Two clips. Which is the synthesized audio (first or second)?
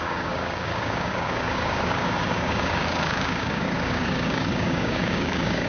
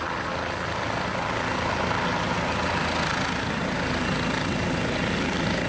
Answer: first